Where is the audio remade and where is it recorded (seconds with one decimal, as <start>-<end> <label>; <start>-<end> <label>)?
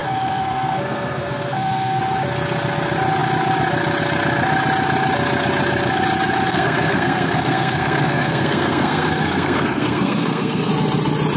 0.0-2.0 remade; 2.0-6.5 recorded; 6.5-10.7 remade; 10.7-11.4 recorded